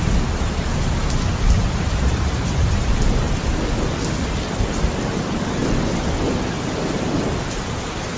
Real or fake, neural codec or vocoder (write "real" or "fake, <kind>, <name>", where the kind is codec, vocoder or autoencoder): real